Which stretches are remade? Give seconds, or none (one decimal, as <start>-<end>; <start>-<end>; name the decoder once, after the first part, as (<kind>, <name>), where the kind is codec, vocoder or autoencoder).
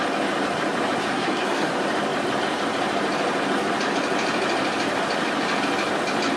1.1-1.7 (codec, SNAC)